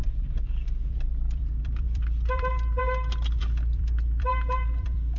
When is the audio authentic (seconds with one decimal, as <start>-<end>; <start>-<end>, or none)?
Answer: 0.0-0.9; 2.8-3.4

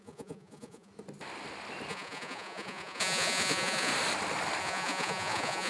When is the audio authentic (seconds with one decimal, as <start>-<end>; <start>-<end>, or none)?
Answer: 0.9-1.9; 3.9-4.6

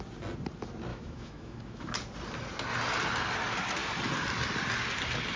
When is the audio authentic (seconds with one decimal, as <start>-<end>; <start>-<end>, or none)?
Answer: 0.0-0.9; 1.9-5.4

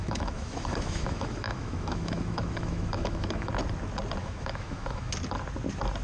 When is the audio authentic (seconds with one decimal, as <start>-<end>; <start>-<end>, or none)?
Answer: 3.5-4.2; 5.1-6.0

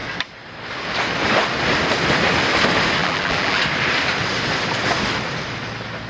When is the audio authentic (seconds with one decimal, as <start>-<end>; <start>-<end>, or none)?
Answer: 0.0-3.0; 3.6-6.1